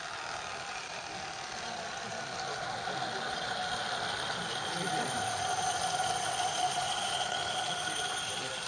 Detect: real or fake real